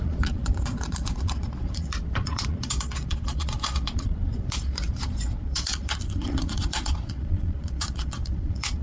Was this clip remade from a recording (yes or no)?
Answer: yes